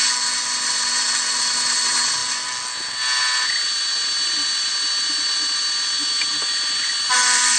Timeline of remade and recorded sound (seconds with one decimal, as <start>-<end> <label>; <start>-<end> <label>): 0.0-7.6 recorded